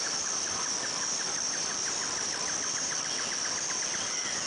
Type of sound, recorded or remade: recorded